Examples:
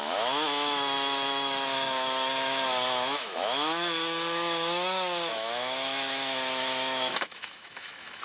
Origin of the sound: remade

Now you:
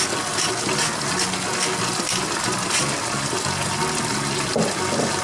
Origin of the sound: recorded